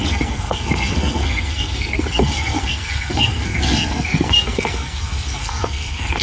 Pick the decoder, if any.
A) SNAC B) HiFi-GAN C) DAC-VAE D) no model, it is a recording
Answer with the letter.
A